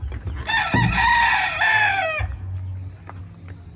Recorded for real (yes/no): yes